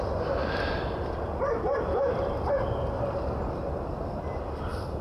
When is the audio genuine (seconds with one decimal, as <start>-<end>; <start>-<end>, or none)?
0.0-5.0